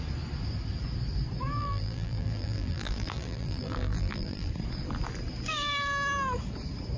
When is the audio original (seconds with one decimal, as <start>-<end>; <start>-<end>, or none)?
0.0-1.6; 4.5-7.0